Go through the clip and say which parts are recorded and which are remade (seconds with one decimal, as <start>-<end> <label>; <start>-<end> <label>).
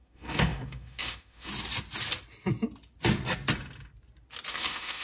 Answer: 0.0-1.5 remade; 1.5-4.5 recorded; 4.5-5.0 remade